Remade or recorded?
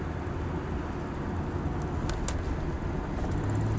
recorded